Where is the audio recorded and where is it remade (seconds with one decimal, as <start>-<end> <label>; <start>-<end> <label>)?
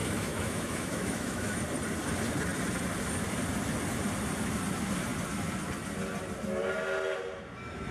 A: 0.0-1.6 remade; 1.6-7.9 recorded